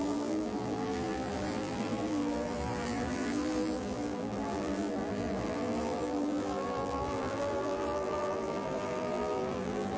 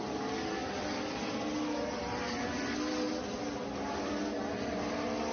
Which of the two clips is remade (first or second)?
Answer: first